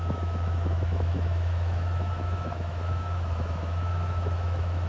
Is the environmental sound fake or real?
fake